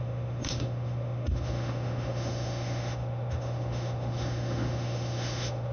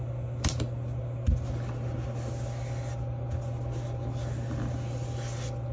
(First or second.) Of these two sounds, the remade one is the first